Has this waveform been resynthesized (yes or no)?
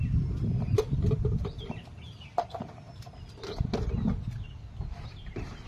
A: no